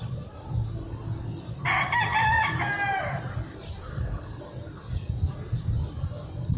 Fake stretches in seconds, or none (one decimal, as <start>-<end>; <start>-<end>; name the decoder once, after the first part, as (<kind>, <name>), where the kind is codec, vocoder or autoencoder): 3.8-4.4 (codec, SNAC)